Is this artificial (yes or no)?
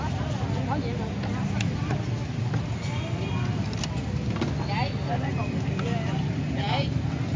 no